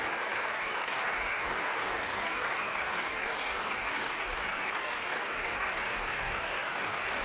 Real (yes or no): no